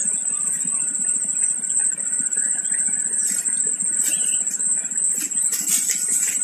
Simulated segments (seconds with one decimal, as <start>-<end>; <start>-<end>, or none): none